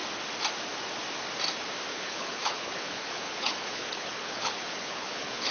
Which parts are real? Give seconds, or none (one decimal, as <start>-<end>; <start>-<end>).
0.0-1.9